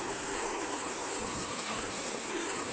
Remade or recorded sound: remade